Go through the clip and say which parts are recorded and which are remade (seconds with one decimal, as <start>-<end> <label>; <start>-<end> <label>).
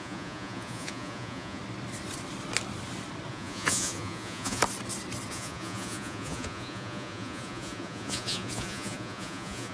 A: 0.0-1.6 remade; 1.6-3.3 recorded; 3.3-4.6 remade; 4.6-5.3 recorded; 5.3-9.7 remade